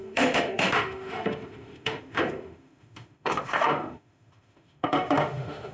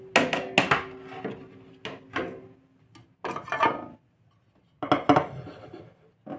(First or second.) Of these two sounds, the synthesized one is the first